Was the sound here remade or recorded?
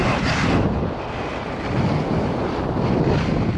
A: recorded